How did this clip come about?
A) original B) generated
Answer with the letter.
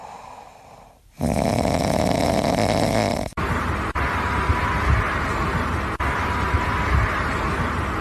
A